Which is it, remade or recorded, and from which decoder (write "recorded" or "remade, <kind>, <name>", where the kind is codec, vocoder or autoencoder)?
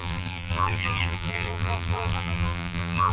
remade, vocoder, BigVGAN v2